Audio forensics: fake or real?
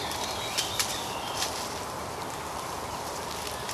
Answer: real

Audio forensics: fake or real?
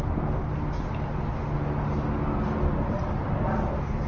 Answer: real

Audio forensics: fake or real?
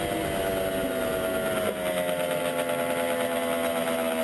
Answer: real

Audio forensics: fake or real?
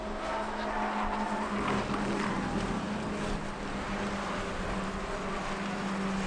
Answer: real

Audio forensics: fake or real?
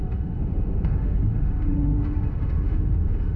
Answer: fake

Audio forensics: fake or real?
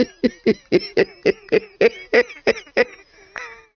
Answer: real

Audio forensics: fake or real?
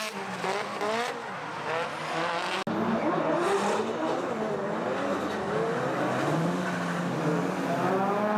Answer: real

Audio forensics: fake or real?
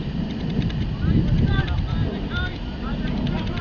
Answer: real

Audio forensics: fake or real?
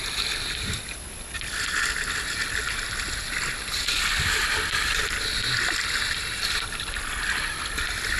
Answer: real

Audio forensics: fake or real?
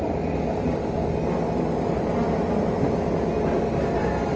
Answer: real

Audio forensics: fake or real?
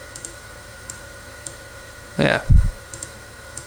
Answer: fake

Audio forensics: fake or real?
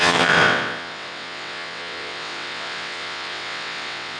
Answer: fake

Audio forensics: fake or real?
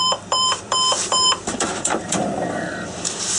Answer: fake